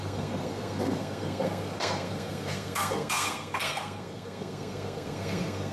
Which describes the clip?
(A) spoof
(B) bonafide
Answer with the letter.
A